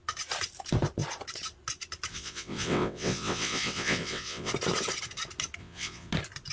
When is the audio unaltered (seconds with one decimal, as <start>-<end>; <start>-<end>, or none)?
0.0-2.1; 4.5-5.6; 6.1-6.5